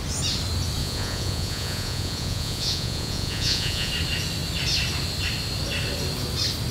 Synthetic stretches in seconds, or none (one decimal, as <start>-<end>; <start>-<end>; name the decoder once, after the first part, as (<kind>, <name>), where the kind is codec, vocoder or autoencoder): 0.8-3.9 (vocoder, Vocos)